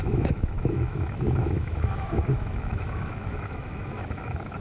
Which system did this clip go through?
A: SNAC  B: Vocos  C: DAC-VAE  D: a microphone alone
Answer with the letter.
C